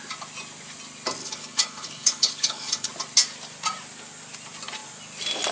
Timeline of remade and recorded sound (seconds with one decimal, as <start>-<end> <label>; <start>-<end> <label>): 0.0-1.2 recorded; 1.2-2.9 remade; 2.9-5.5 recorded